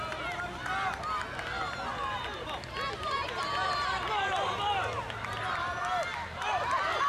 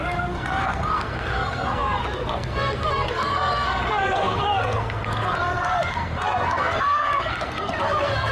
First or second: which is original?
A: first